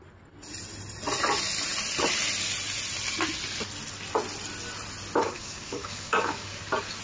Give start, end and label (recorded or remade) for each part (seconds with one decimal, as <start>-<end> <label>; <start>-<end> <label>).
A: 0.0-5.2 recorded; 5.2-6.6 remade; 6.6-7.0 recorded